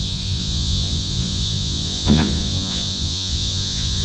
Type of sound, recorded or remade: remade